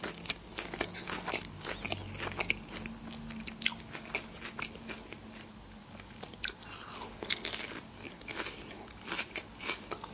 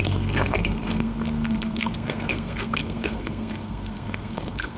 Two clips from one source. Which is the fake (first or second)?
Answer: second